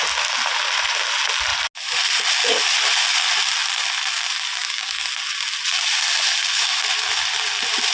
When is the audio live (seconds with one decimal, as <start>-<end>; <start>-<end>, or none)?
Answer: 0.0-4.6; 5.1-7.9